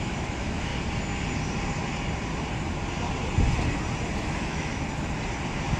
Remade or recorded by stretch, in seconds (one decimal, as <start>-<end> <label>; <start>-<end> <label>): 0.0-0.7 remade; 0.7-4.2 recorded; 4.2-4.7 remade; 4.7-5.8 recorded